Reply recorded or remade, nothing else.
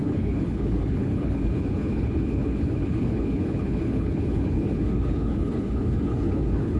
remade